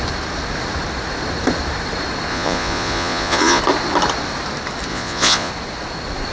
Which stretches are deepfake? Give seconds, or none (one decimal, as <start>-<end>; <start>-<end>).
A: 2.3-3.6; 4.9-5.5